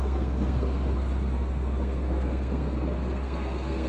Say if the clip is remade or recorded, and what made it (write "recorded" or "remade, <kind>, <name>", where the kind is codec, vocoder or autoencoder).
remade, codec, SNAC